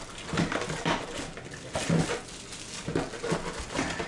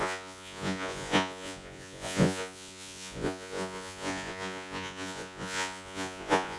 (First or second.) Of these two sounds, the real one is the first